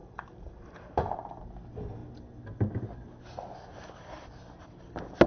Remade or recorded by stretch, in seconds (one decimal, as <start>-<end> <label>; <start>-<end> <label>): 0.0-1.1 remade; 1.1-5.3 recorded